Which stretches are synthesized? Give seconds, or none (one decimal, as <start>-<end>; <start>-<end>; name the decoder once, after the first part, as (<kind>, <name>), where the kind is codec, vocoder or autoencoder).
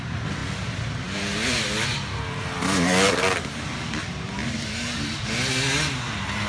none